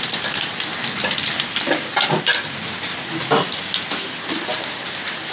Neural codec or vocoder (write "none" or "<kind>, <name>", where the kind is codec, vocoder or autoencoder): none